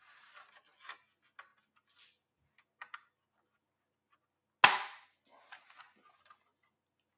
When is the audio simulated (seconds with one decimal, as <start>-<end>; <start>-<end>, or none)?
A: none